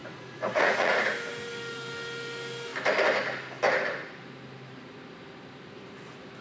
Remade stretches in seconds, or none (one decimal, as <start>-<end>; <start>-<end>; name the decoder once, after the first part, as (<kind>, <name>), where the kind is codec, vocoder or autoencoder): 0.0-1.1 (vocoder, Vocos)